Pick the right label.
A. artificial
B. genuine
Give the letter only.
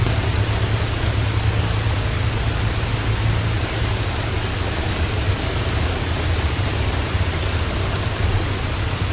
B